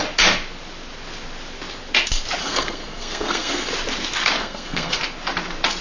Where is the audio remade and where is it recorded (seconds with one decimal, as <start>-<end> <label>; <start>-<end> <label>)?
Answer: 0.0-2.4 recorded; 2.4-3.7 remade; 3.7-4.4 recorded; 4.4-5.0 remade; 5.0-5.8 recorded